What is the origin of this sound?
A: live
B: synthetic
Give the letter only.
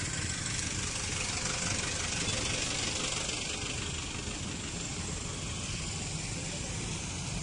A